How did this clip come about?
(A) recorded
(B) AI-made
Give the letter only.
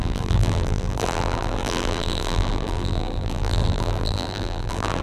B